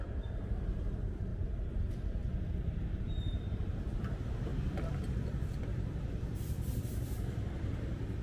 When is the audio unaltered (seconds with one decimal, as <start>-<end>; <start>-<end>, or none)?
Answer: 1.3-1.8; 2.2-3.0; 4.5-6.8